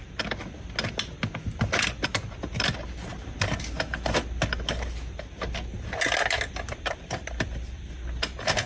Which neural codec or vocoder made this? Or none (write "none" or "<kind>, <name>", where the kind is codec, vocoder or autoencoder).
none